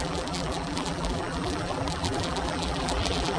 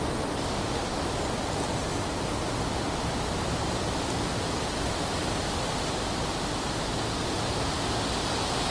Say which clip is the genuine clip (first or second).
second